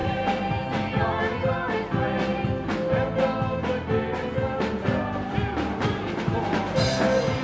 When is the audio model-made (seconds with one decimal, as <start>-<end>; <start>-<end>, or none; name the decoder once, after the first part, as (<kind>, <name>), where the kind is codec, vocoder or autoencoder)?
0.0-0.6 (vocoder, BigVGAN v2)